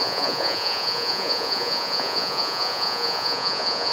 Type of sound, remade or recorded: remade